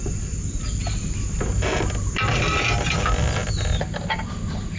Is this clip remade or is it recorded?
recorded